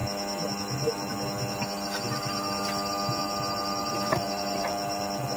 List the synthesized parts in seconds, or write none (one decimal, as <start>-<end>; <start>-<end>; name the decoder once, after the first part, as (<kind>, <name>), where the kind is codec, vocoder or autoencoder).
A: 3.2-5.4 (vocoder, BigVGAN v2)